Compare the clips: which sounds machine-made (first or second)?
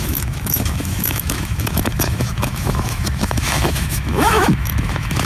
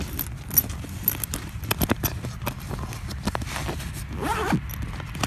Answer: first